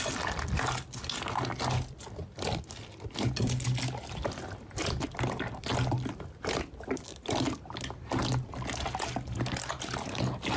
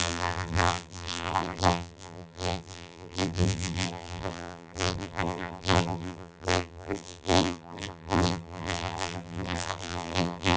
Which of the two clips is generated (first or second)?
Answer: second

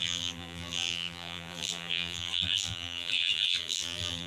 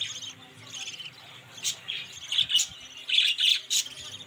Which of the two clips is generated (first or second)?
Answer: first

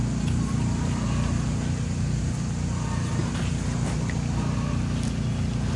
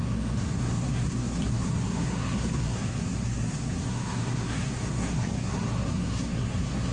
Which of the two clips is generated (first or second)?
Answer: second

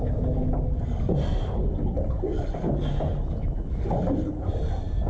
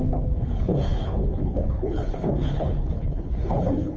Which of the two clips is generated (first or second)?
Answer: second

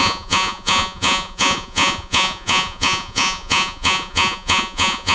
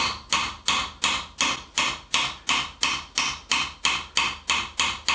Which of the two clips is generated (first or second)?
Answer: first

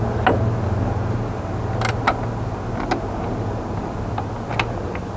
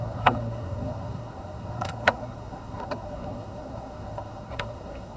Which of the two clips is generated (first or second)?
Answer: second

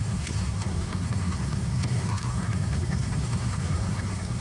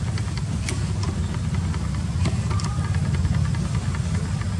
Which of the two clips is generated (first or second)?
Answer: first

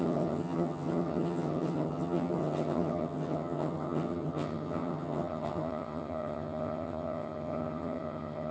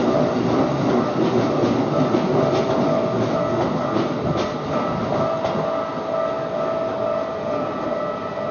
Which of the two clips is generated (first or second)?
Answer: first